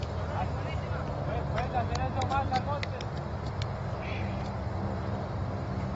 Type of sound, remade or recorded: recorded